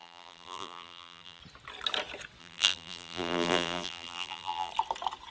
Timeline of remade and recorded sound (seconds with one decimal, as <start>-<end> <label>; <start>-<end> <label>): 0.0-1.4 remade; 1.4-2.4 recorded; 2.4-4.7 remade; 4.7-5.3 recorded